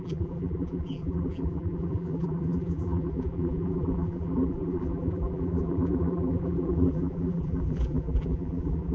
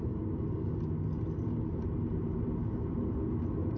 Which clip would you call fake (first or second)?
first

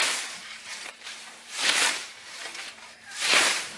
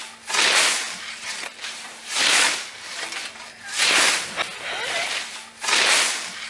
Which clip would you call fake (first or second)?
first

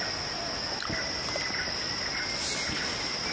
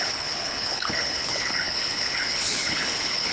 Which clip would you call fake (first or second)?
second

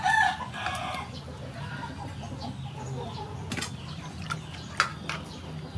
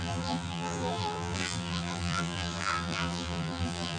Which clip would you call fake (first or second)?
second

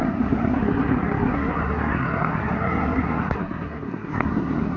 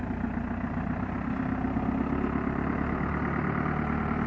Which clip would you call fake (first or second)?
first